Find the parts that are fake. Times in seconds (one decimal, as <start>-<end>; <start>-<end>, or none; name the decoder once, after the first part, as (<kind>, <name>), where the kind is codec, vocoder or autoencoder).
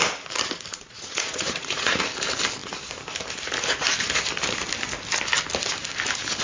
0.7-2.0 (vocoder, Vocos)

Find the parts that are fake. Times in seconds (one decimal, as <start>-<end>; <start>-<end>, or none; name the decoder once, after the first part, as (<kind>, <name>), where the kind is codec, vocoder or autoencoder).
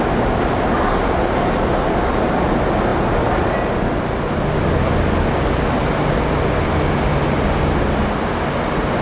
none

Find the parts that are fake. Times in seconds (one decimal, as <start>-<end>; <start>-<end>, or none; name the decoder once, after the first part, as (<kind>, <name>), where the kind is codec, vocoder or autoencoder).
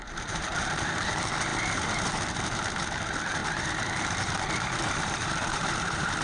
0.0-6.2 (vocoder, BigVGAN v2)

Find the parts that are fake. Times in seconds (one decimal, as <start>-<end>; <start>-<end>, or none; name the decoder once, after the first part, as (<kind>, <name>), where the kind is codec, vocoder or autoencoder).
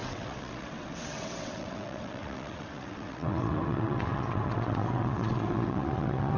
0.0-6.4 (vocoder, WaveNeXt)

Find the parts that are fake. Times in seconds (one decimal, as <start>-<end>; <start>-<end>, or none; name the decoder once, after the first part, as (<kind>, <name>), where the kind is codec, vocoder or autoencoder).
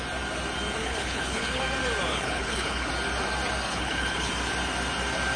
0.8-1.6 (codec, HILCodec); 2.1-2.9; 3.7-4.3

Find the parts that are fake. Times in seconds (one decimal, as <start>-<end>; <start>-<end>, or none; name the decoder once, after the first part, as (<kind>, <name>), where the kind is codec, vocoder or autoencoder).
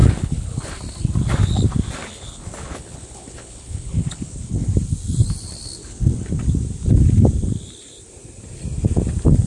0.0-0.7 (codec, HILCodec); 2.0-4.7; 5.8-6.4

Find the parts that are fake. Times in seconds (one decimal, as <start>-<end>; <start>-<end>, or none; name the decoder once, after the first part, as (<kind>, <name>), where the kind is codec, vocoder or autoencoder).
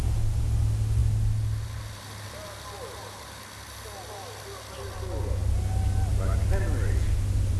none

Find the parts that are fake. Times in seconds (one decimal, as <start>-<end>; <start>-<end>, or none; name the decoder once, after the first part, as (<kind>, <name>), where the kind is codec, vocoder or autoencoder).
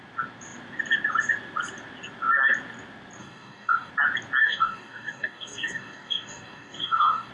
3.2-3.9 (codec, DAC); 4.4-7.3